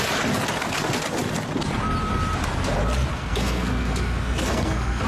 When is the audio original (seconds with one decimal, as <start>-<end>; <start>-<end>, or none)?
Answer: 0.0-3.1